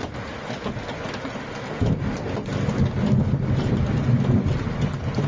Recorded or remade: recorded